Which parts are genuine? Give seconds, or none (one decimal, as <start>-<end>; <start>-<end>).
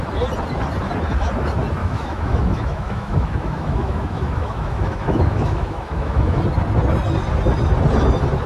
0.0-1.8; 6.4-8.5